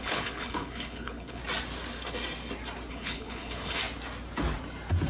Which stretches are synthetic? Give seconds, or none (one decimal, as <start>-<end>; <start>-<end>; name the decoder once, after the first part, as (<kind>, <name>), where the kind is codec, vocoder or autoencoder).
0.0-1.4 (codec, HILCodec); 2.9-3.8